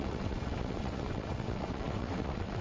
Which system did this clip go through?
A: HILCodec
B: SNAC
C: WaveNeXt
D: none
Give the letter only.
C